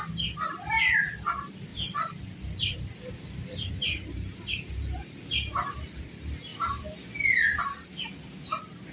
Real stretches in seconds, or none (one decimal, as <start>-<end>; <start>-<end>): 0.0-1.7; 3.7-6.5; 7.6-8.9